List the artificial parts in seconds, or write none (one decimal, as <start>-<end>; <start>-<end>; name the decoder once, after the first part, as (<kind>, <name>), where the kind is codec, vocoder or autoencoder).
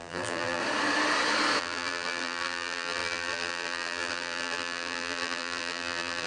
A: 0.0-0.6 (vocoder, BigVGAN v2); 1.6-6.3